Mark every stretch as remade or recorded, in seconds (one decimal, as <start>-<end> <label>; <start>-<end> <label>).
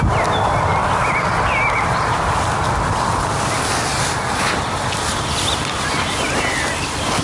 0.0-7.2 recorded